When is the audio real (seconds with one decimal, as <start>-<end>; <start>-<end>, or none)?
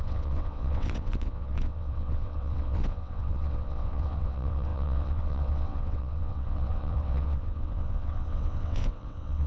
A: none